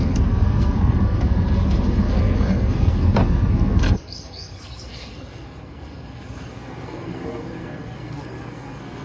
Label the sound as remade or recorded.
remade